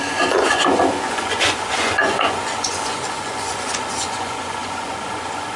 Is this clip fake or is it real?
fake